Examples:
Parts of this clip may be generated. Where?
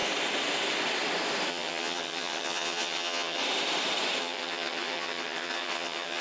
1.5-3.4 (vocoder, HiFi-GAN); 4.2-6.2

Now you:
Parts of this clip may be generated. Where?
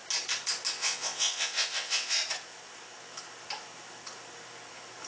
0.7-2.2 (vocoder, WaveNeXt)